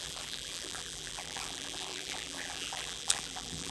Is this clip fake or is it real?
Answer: fake